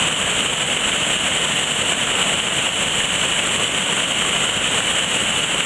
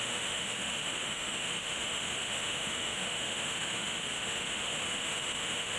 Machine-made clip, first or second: second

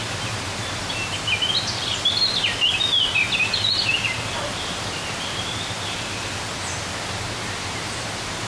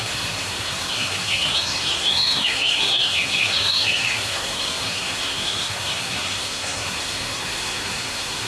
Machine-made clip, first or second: second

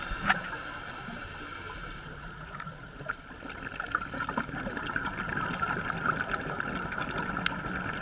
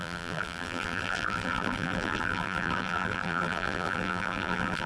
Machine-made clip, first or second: second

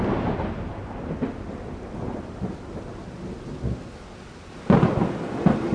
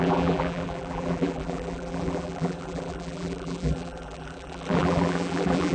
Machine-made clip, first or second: second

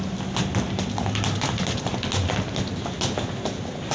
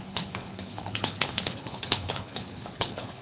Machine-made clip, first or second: second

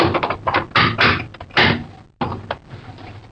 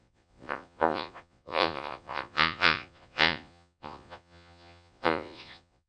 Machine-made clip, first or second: second